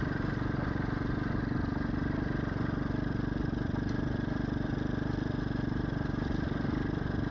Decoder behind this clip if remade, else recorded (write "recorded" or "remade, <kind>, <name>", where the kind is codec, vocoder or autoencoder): recorded